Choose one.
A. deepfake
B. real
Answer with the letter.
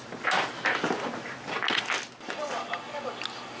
B